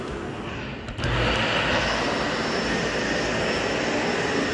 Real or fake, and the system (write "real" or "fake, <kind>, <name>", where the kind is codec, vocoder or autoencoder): real